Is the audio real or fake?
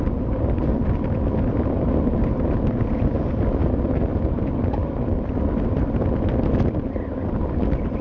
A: real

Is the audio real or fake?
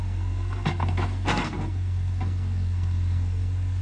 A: fake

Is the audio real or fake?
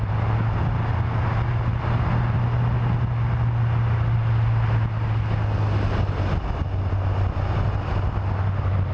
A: real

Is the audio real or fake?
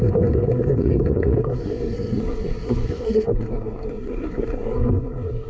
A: fake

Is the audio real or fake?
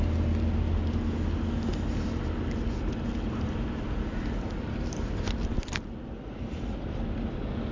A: real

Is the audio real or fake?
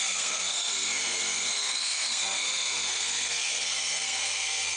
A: fake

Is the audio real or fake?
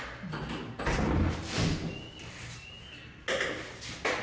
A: real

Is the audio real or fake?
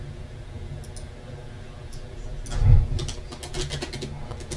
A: real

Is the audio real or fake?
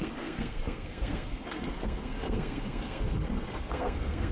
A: fake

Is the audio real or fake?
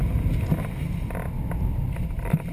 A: real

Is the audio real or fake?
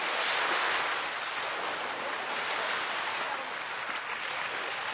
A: real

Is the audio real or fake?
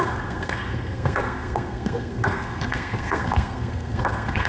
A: fake